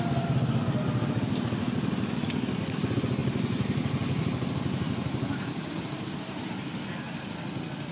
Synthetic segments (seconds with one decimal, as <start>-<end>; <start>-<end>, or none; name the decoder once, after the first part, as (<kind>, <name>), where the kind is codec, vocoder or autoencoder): none